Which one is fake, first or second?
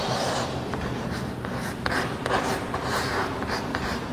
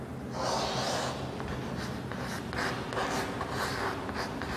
first